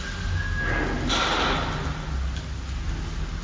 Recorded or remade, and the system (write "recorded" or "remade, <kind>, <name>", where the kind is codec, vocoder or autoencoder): recorded